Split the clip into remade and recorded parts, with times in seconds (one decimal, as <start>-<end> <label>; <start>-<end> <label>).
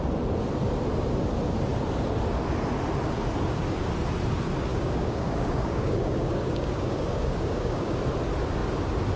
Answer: 0.0-4.7 recorded; 4.7-8.0 remade; 8.0-9.2 recorded